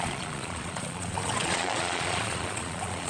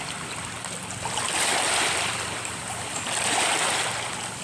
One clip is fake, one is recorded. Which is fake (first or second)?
first